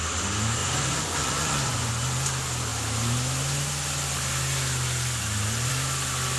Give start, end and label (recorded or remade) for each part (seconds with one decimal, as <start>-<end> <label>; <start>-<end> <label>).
0.0-0.6 recorded; 0.6-1.9 remade; 1.9-6.4 recorded